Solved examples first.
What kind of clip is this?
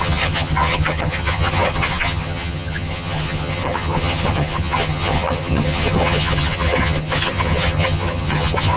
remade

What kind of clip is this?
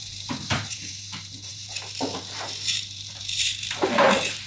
remade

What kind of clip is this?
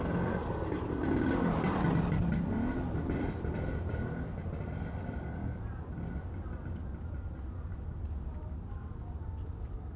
recorded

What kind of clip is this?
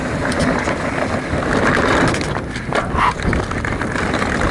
recorded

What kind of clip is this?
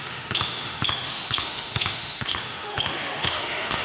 remade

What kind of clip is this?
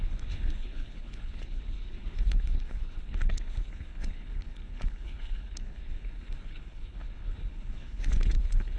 remade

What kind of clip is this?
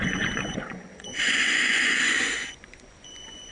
remade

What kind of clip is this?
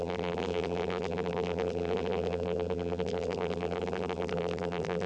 remade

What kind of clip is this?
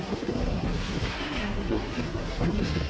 remade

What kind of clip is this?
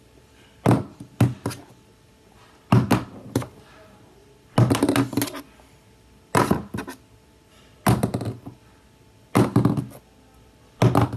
recorded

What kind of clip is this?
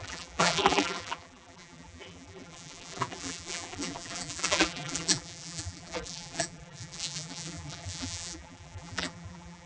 remade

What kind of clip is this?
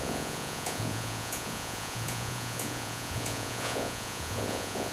remade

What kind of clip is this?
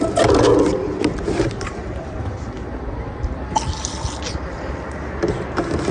recorded